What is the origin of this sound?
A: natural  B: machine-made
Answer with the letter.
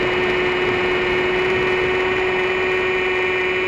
A